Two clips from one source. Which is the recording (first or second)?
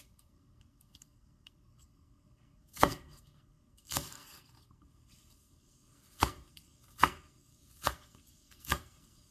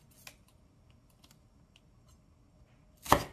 second